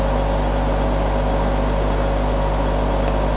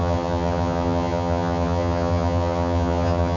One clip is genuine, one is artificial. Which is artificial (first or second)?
second